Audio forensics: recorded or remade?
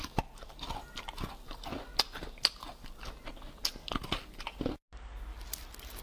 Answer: recorded